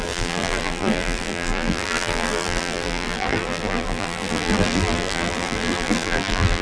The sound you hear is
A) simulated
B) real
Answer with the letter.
A